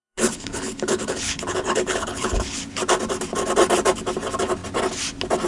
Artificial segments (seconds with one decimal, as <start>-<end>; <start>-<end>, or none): 0.0-2.6